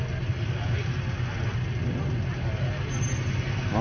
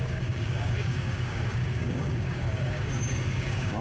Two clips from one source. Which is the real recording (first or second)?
first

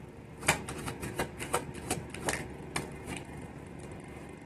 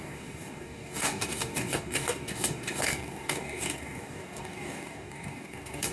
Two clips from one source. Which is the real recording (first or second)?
first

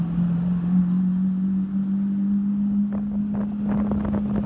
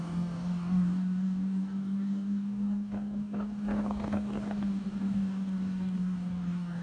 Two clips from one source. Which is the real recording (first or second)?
first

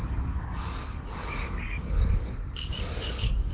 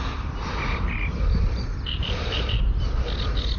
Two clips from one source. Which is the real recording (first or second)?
second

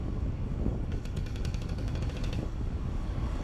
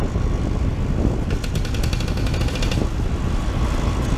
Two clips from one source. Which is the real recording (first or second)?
second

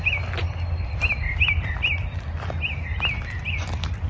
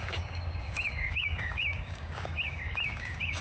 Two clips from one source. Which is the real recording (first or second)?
first